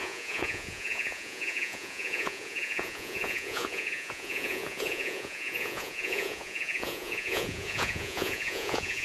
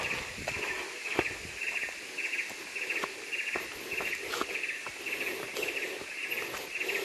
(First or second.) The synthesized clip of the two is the first